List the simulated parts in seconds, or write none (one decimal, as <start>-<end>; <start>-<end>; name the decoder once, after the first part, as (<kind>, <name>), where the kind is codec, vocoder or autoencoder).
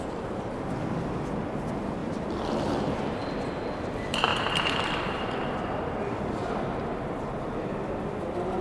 2.0-3.0 (vocoder, BigVGAN v2)